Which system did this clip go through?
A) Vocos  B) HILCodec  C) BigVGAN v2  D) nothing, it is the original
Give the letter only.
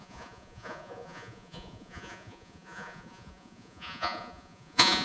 A